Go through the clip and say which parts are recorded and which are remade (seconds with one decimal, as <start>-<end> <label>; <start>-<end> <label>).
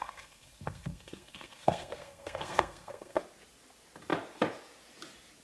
0.0-3.2 remade; 3.2-5.4 recorded